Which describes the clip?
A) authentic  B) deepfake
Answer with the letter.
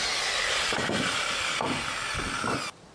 A